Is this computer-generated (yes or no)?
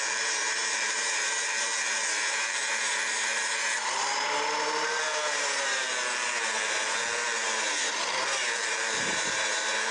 yes